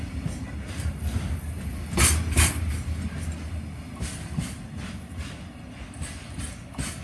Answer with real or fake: real